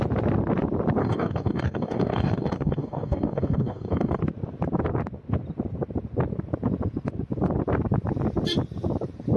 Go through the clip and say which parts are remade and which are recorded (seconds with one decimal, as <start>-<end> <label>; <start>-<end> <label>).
0.0-1.0 recorded; 1.0-4.2 remade; 4.2-9.4 recorded